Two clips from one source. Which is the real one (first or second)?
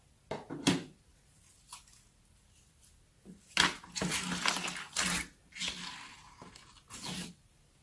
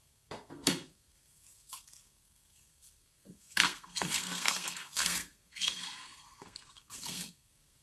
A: first